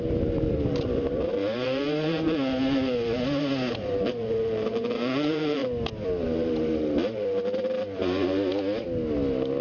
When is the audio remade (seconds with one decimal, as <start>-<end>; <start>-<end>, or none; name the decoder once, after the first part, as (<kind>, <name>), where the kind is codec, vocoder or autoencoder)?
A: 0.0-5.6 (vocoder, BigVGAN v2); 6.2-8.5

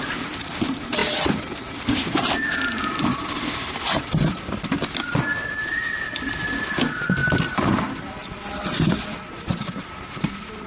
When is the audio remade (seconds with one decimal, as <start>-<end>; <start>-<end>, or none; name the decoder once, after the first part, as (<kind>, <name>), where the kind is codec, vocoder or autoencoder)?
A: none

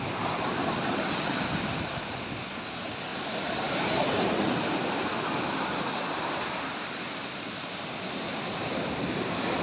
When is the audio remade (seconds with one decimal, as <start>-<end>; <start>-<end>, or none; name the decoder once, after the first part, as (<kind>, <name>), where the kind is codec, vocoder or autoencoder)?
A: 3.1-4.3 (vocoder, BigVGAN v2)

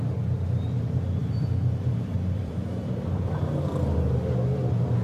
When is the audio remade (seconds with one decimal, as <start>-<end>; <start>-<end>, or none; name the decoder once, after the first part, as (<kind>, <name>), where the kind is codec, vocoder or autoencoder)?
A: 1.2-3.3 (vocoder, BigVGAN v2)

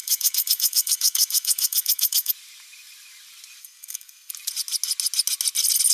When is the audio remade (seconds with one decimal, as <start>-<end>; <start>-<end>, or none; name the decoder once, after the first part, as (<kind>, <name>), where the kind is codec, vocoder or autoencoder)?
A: 0.0-2.3 (codec, SNAC); 3.6-4.3